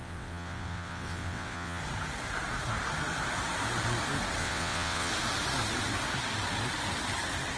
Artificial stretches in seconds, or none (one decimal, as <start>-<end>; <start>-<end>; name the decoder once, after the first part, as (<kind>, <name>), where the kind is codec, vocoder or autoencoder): 0.0-1.8 (vocoder, WaveNeXt); 4.4-5.1